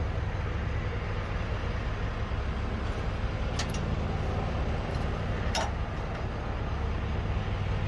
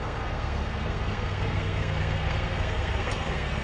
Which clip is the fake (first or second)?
second